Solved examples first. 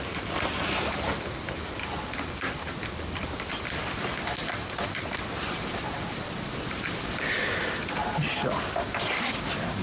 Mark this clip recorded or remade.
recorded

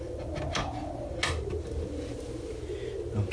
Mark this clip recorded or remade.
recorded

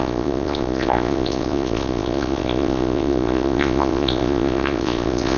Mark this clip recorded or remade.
remade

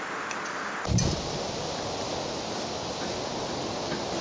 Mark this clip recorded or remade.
recorded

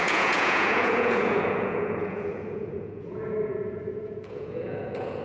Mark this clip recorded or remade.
remade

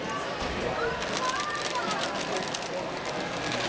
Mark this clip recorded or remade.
recorded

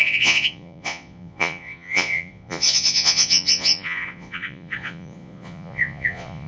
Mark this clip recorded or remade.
remade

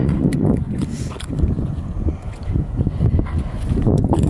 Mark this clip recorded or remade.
remade